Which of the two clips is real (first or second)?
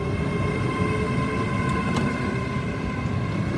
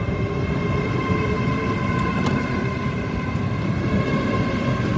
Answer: first